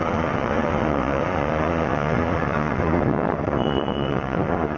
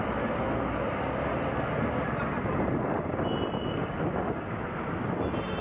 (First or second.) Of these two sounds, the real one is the second